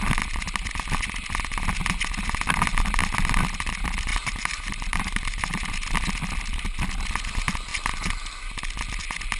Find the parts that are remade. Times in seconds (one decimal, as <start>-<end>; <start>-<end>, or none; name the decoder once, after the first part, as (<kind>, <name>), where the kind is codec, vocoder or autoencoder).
4.1-5.7 (vocoder, BigVGAN v2); 7.7-8.7